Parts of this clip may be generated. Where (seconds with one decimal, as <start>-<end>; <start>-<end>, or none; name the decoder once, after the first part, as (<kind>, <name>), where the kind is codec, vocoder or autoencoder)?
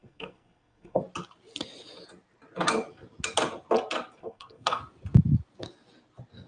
0.0-1.0 (codec, SNAC); 4.2-4.8